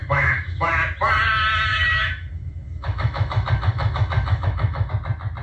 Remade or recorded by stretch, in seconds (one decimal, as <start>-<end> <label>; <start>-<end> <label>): 0.0-0.7 remade; 0.7-1.7 recorded; 1.7-4.9 remade; 4.9-5.4 recorded